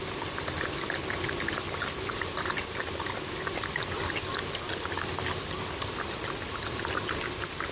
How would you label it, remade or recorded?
recorded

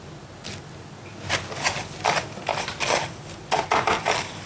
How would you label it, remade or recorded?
recorded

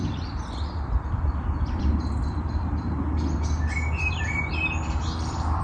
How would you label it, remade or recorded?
remade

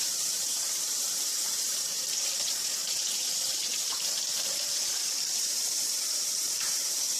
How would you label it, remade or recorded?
remade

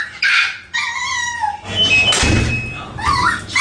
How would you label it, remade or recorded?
recorded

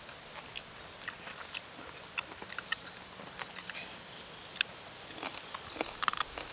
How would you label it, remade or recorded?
recorded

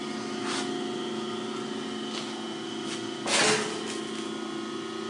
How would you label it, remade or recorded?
recorded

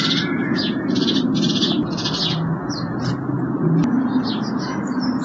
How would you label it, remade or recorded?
recorded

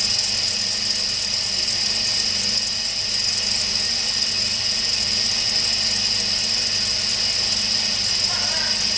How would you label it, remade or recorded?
recorded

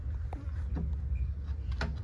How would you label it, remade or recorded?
recorded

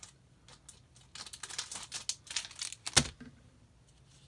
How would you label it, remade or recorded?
recorded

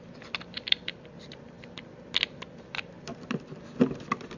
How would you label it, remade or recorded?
remade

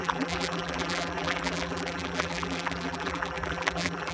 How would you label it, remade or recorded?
remade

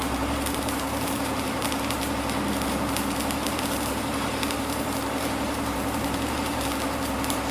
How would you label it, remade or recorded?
remade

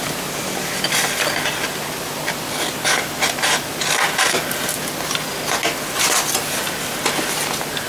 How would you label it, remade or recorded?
recorded